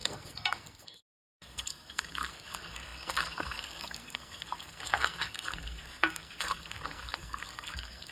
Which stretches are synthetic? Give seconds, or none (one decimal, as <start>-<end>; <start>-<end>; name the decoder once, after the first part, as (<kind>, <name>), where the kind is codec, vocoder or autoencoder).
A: 0.0-8.1 (codec, SNAC)

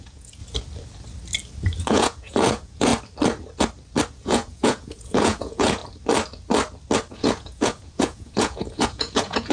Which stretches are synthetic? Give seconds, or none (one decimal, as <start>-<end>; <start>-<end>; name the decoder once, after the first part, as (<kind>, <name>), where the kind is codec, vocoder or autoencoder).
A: 0.0-0.4 (vocoder, Vocos); 1.9-2.9; 4.1-5.8; 7.1-9.5

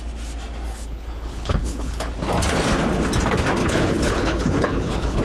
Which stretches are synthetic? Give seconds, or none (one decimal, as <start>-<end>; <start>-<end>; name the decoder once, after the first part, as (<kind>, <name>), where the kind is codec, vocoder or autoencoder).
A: 0.7-2.1 (codec, HILCodec); 3.6-5.2

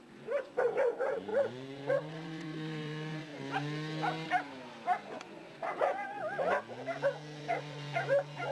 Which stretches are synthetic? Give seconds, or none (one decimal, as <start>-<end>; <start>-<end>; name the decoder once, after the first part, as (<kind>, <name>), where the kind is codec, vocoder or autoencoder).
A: 0.0-3.3 (vocoder, Vocos); 5.1-6.2; 7.4-8.5

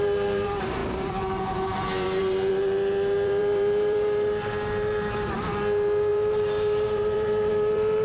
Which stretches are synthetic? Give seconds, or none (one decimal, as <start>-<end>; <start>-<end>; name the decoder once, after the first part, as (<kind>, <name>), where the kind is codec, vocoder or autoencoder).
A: 0.0-8.0 (vocoder, BigVGAN v2)